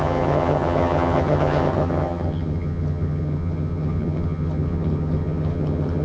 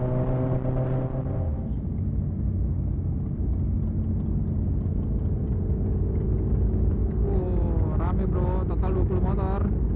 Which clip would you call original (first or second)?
second